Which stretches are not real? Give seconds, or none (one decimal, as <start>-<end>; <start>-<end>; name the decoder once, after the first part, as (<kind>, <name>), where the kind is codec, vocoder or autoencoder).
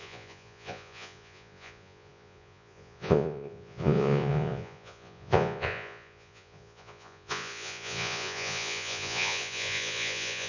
0.0-10.5 (vocoder, Vocos)